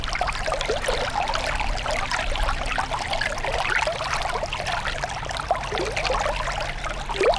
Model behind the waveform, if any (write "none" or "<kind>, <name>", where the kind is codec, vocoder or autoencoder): none